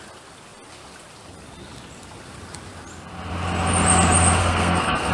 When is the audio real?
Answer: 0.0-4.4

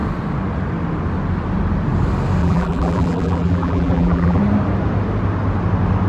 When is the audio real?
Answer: 0.0-2.4; 4.4-6.1

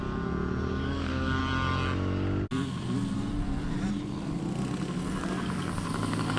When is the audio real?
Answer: 0.0-0.7; 1.4-5.2

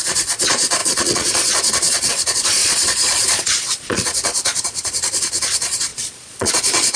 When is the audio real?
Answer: none

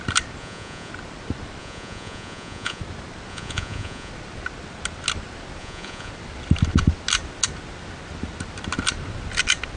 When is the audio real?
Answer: 0.0-0.4; 0.9-1.6; 2.8-3.3; 4.1-5.6; 6.1-9.8

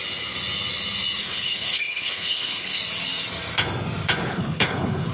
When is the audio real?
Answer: 0.0-1.2; 2.8-4.3

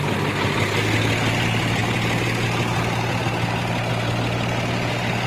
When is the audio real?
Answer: 0.0-5.3